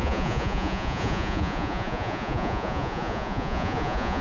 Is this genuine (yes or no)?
no